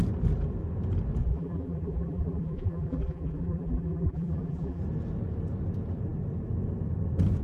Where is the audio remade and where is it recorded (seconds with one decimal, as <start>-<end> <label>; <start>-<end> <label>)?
0.0-1.2 recorded; 1.2-4.8 remade; 4.8-7.4 recorded